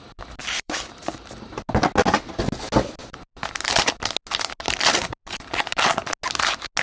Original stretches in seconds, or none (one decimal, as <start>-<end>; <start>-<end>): 0.0-0.4; 1.5-6.8